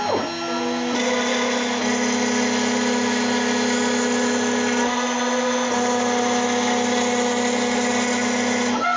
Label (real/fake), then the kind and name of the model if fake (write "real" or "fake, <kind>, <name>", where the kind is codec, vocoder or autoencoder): real